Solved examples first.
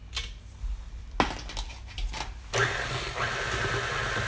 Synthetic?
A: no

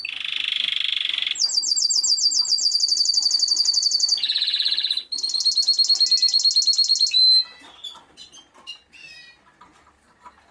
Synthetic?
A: no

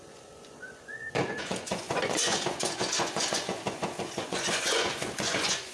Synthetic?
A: yes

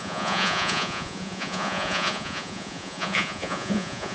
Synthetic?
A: yes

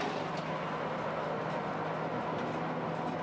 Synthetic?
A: no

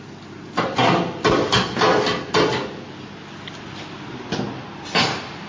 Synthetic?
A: no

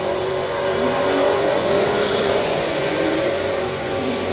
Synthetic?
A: yes